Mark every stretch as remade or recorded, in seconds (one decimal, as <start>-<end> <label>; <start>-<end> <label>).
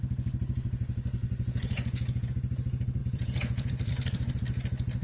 0.0-1.2 recorded; 1.2-2.3 remade; 2.3-3.0 recorded; 3.0-3.9 remade; 3.9-5.0 recorded